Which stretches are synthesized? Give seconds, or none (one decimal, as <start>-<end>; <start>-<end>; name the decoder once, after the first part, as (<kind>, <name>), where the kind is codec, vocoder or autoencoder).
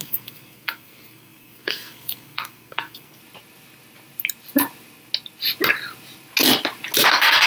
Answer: 0.0-3.2 (codec, SNAC); 7.1-7.5